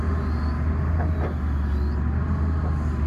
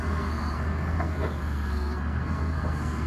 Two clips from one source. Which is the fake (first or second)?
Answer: second